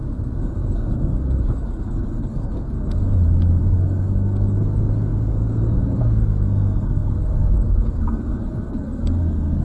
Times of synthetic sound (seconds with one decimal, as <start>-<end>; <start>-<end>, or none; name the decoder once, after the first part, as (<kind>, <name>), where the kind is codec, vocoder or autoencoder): 0.0-3.0 (codec, SNAC); 3.6-9.6